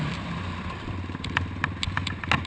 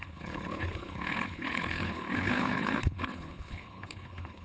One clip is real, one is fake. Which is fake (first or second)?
second